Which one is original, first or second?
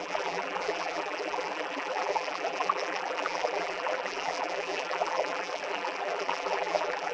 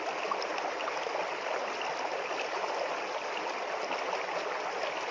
second